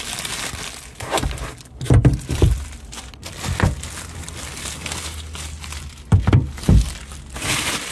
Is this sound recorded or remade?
recorded